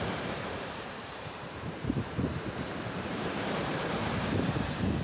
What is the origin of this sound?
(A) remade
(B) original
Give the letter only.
A